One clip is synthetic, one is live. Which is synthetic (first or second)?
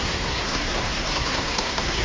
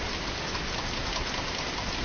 first